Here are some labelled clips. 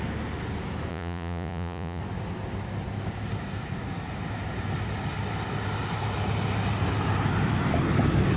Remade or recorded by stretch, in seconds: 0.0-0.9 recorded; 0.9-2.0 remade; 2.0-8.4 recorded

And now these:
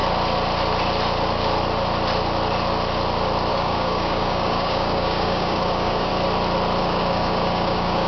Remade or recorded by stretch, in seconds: 0.0-3.5 recorded; 3.5-6.1 remade; 6.1-6.8 recorded; 6.8-8.1 remade

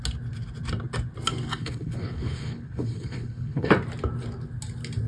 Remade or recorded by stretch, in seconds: 0.0-1.6 recorded; 1.6-3.7 remade; 3.7-5.1 recorded

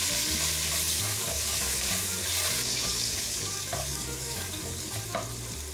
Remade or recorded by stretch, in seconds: 0.0-0.9 recorded; 0.9-1.9 remade; 1.9-2.7 recorded; 2.7-4.9 remade; 4.9-5.7 recorded

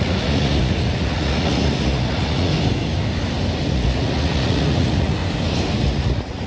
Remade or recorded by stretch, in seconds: 0.0-2.5 remade; 2.5-3.7 recorded; 3.7-5.2 remade; 5.2-5.8 recorded; 5.8-6.5 remade

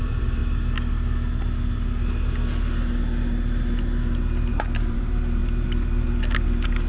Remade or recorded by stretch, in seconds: 0.0-0.4 remade; 0.4-4.5 recorded; 4.5-5.4 remade; 5.4-6.9 recorded